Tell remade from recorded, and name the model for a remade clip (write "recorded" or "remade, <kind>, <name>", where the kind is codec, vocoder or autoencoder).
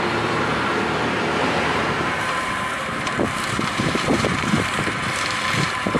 remade, vocoder, BigVGAN v2